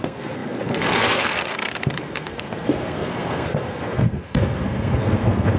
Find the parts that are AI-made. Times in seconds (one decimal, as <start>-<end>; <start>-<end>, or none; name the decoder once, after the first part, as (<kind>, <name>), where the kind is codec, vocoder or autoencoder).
0.0-5.6 (codec, SNAC)